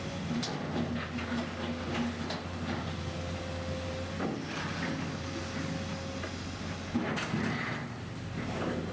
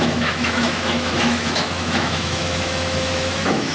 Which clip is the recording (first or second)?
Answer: first